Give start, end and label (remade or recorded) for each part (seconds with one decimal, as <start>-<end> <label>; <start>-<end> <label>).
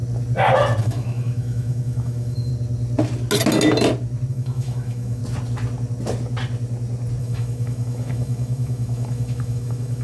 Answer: 0.0-0.8 recorded; 0.8-2.5 remade; 2.5-4.3 recorded; 4.3-5.2 remade; 5.2-7.2 recorded; 7.2-10.0 remade